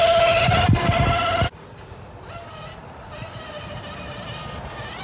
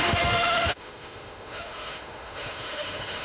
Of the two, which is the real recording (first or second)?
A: first